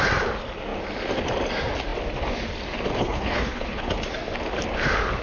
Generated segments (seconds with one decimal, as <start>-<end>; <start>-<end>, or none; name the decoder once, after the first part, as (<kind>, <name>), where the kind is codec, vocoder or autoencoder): 3.0-3.9 (codec, HILCodec)